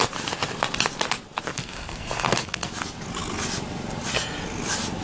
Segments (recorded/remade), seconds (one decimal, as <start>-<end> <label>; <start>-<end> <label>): 0.0-1.5 recorded; 1.5-2.7 remade; 2.7-5.0 recorded